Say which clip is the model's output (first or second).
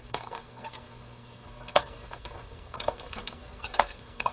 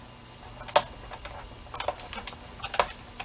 first